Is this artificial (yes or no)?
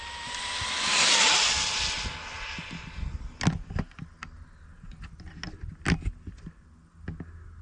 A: no